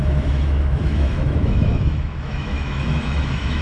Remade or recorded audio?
remade